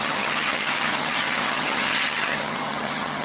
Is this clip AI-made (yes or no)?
yes